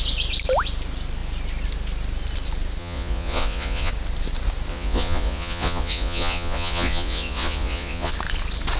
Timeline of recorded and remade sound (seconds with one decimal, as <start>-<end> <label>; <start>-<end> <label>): 0.0-2.8 recorded; 2.8-3.9 remade; 3.9-4.7 recorded; 4.7-8.1 remade; 8.1-8.8 recorded